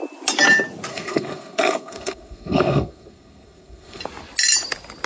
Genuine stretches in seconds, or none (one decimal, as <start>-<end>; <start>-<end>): 0.0-0.9; 4.0-5.1